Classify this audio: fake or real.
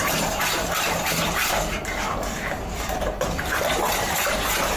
fake